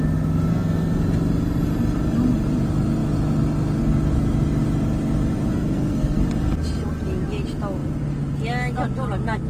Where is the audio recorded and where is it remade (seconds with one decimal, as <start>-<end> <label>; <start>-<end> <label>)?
0.0-0.5 recorded; 0.5-1.0 remade; 1.0-5.5 recorded; 5.5-6.2 remade; 6.2-9.5 recorded